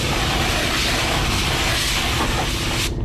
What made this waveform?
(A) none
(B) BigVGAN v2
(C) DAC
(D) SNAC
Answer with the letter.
A